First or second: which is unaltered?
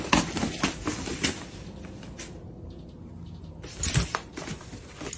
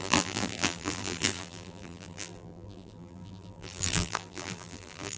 first